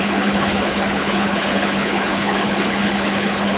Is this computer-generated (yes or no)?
yes